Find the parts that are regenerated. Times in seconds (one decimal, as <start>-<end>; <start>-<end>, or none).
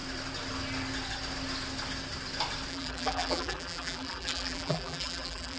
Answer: 2.7-5.6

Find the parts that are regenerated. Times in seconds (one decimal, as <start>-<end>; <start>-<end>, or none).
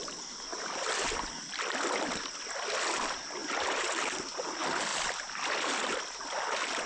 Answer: none